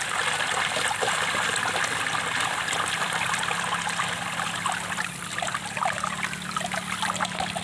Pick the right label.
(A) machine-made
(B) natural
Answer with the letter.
B